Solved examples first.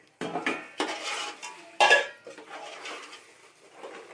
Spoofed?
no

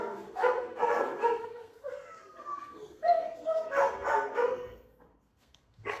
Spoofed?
yes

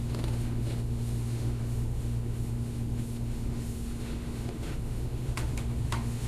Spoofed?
yes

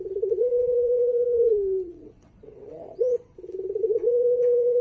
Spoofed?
yes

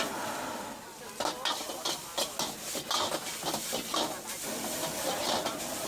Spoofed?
no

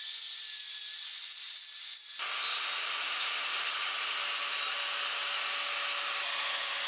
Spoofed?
no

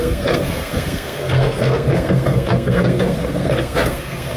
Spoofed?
yes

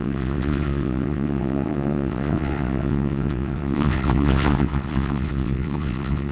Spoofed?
yes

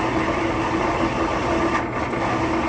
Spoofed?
no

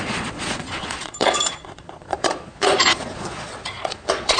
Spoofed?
yes